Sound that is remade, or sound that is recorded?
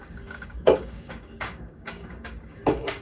remade